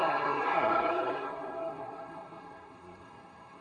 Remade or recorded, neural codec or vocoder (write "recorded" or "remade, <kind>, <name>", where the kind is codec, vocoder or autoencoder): remade, codec, SNAC